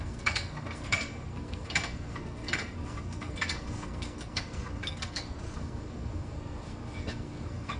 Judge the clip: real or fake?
fake